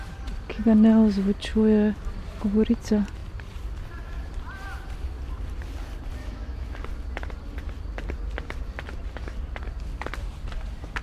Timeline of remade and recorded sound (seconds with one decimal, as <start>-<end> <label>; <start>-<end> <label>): 0.0-6.2 recorded; 6.2-6.8 remade; 6.8-11.0 recorded